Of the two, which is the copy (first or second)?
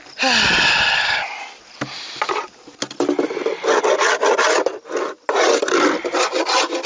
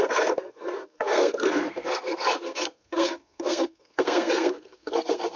second